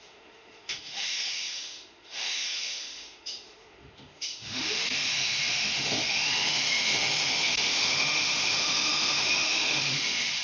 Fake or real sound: fake